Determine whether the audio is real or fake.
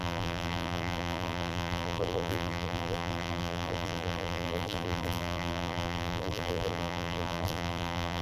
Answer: fake